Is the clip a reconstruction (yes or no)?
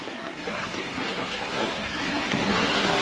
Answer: yes